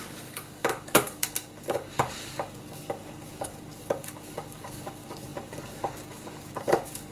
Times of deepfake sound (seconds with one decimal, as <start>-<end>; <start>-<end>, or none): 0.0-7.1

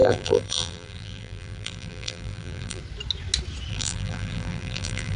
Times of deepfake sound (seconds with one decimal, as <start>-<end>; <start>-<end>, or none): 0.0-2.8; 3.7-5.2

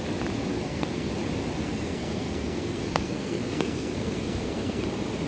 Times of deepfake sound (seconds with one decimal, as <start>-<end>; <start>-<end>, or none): 0.5-1.1; 1.6-4.8

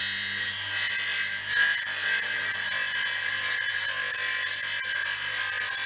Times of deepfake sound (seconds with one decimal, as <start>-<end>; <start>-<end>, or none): none